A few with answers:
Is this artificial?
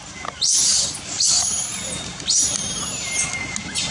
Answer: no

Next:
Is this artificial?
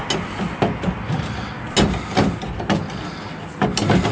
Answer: no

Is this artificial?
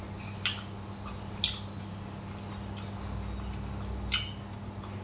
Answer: no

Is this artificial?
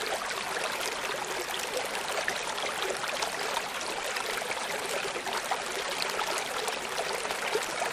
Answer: no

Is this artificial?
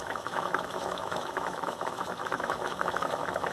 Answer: yes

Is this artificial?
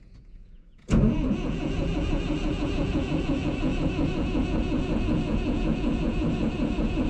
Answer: yes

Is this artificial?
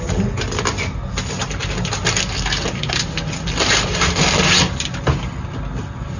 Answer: no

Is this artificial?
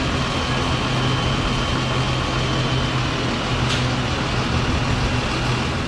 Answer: no